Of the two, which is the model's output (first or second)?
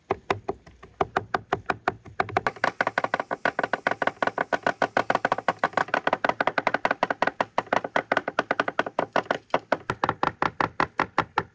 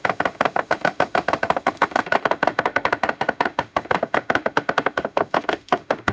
second